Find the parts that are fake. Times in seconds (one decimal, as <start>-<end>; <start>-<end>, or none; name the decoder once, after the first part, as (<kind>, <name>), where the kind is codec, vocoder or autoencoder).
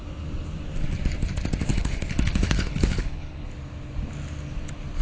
1.7-3.5 (codec, HILCodec)